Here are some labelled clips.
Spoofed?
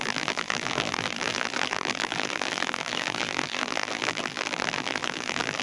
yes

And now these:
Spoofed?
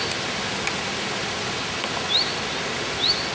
no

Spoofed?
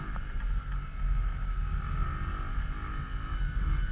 no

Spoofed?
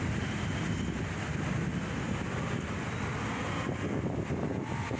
no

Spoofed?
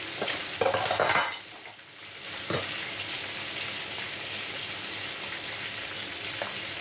no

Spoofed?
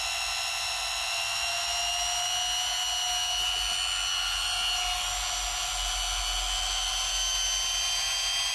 no